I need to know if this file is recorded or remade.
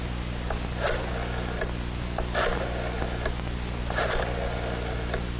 recorded